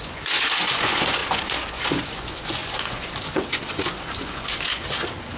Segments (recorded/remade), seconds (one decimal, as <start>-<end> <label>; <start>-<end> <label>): 0.0-5.4 remade